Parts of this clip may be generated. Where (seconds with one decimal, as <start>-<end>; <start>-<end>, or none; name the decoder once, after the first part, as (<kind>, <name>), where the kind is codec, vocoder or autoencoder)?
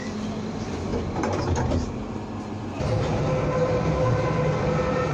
none